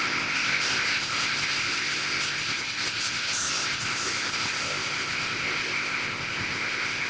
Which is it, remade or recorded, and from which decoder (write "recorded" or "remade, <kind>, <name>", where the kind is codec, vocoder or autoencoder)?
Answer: remade, codec, ZipCodec